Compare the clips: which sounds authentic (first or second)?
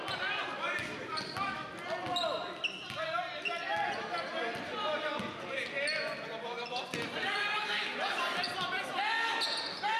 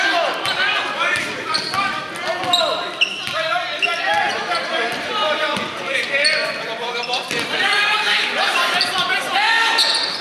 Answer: first